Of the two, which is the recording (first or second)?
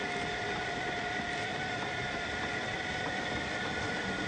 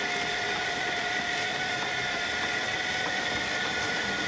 second